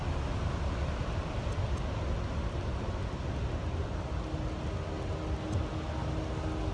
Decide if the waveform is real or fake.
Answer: real